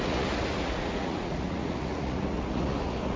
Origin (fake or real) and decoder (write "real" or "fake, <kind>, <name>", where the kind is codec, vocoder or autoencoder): fake, vocoder, Vocos